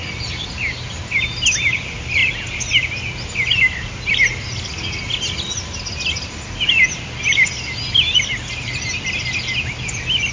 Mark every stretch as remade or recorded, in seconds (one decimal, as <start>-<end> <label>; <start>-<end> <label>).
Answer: 0.0-10.3 recorded